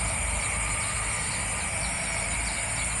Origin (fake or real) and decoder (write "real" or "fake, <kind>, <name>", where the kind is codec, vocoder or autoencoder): real